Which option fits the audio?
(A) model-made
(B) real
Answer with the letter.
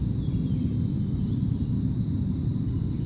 A